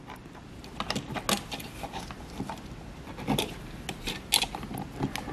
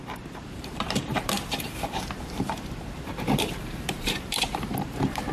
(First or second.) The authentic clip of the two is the first